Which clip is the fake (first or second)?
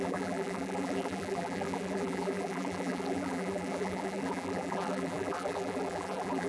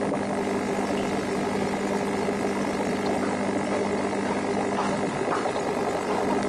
first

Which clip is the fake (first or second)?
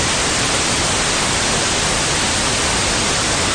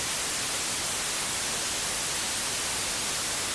first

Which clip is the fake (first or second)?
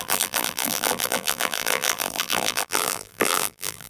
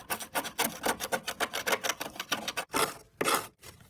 first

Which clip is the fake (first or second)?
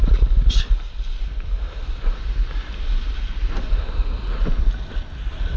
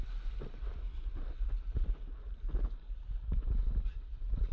first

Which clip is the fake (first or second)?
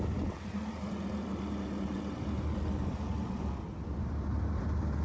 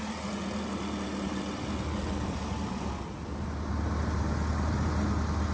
first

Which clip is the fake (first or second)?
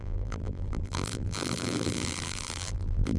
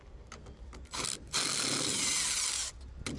first